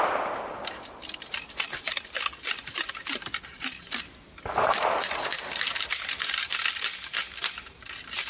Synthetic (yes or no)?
no